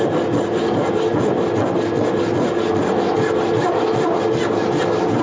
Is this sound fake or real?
real